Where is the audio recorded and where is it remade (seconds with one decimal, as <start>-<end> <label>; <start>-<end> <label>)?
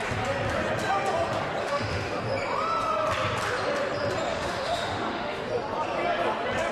0.0-1.6 recorded; 1.6-2.2 remade; 2.2-4.3 recorded; 4.3-5.5 remade; 5.5-6.7 recorded